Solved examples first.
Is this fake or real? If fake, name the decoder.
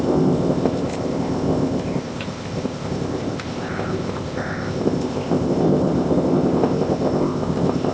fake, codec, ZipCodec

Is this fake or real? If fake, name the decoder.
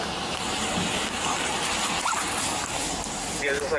real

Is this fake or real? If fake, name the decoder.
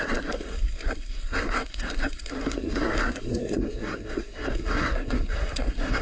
fake, codec, SNAC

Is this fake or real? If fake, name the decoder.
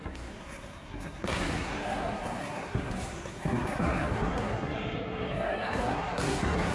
fake, codec, SNAC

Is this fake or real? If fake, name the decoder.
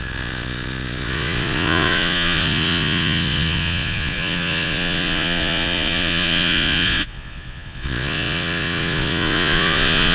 fake, vocoder, Vocos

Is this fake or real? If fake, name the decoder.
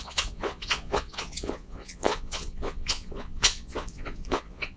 fake, vocoder, Vocos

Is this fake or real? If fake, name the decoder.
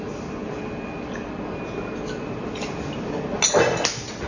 real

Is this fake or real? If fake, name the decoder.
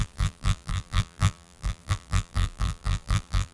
fake, vocoder, BigVGAN v2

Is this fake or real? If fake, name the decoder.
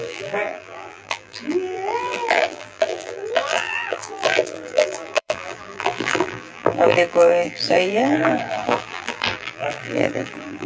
fake, vocoder, BigVGAN v2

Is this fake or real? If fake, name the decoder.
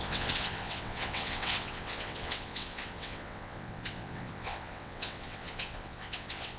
fake, vocoder, WaveNeXt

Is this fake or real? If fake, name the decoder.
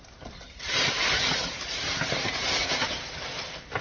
fake, vocoder, BigVGAN v2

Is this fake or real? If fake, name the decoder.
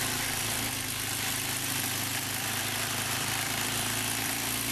fake, vocoder, BigVGAN v2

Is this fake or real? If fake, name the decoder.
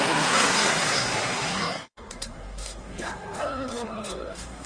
fake, codec, SNAC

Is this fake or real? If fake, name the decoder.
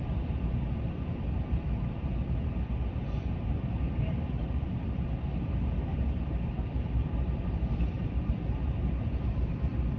fake, vocoder, BigVGAN v2